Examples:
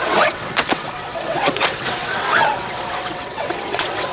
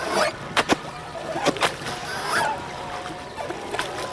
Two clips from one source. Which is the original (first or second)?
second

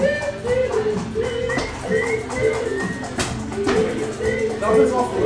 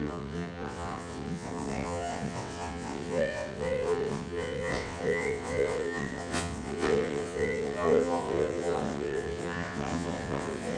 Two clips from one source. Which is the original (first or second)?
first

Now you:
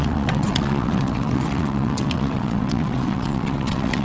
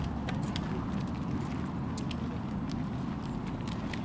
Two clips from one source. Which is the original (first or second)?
second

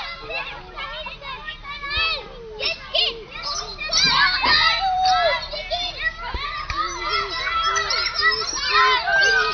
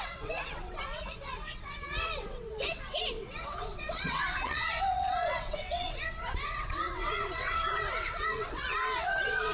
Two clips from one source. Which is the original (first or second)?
first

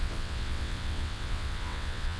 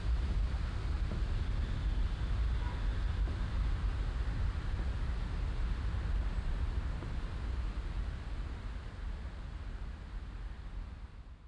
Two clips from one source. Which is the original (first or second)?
second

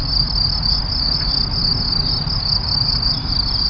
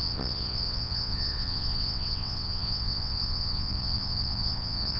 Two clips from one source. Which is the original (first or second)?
first